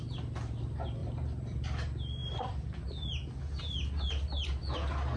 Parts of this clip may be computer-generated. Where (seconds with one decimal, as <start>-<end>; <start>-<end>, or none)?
1.0-1.6; 2.2-2.8